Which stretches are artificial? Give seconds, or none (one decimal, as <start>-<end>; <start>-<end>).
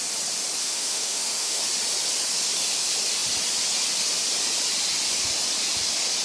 0.6-1.6